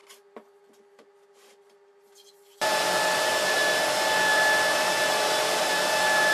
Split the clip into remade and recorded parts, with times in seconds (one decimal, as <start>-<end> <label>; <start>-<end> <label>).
0.0-4.3 recorded; 4.3-6.3 remade